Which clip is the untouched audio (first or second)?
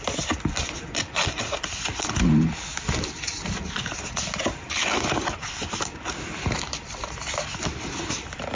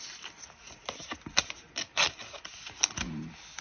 second